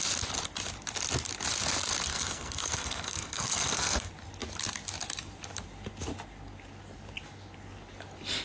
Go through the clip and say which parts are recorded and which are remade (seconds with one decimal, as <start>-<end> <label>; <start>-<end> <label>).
0.0-2.1 recorded; 2.1-4.1 remade; 4.1-8.4 recorded